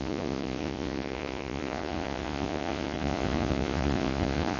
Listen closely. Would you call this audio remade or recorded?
remade